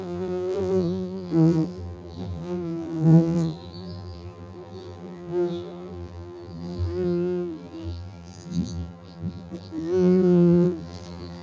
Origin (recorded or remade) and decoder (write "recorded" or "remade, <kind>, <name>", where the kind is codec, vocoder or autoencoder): remade, vocoder, BigVGAN v2